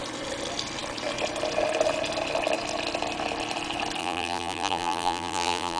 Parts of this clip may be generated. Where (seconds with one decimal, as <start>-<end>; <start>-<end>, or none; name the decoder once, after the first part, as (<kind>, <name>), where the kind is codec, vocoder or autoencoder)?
4.0-5.8 (vocoder, BigVGAN v2)